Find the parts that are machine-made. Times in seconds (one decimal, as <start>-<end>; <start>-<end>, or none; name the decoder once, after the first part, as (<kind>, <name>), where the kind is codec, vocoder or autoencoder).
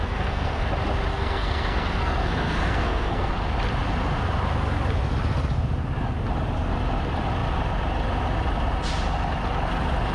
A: 0.0-0.7 (codec, SNAC); 1.1-3.3